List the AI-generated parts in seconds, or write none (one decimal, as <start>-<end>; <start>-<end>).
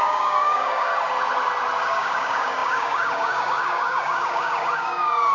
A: 0.0-0.9; 1.8-5.3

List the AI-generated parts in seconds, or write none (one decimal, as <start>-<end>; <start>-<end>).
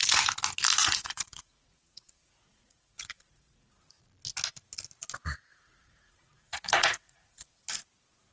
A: 0.8-3.8; 5.5-7.6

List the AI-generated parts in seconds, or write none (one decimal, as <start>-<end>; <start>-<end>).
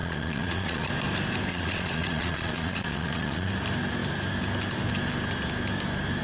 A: 0.0-0.9; 1.5-3.5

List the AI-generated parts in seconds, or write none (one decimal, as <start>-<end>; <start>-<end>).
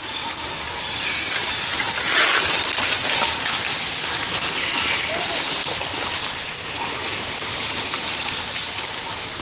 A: none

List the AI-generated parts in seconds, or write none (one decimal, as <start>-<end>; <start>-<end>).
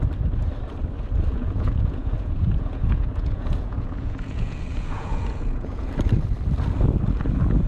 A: 1.3-5.9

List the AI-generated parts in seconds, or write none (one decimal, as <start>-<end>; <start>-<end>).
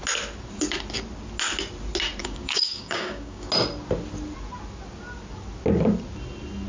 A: 2.2-3.5